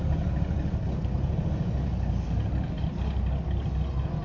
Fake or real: real